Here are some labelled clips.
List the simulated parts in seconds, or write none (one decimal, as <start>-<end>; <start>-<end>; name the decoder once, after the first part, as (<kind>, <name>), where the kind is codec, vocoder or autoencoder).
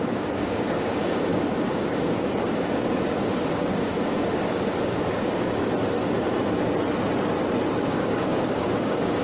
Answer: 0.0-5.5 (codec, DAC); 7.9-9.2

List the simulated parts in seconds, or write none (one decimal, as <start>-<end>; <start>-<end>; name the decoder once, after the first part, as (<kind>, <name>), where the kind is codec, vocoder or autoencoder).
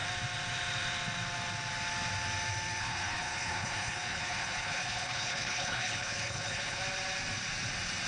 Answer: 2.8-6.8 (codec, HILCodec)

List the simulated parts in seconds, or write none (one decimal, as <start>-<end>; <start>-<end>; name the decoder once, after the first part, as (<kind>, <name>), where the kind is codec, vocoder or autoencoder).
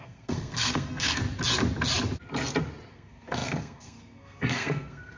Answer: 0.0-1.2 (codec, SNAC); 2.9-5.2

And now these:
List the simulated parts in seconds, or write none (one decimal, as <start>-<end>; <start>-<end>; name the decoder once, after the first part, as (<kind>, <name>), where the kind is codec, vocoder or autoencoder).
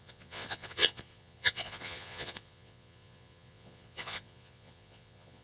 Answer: 0.0-5.4 (vocoder, Vocos)